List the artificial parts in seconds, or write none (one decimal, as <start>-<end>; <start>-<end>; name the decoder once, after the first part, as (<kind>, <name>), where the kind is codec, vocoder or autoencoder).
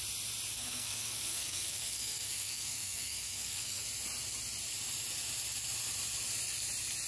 0.5-3.8 (codec, SNAC)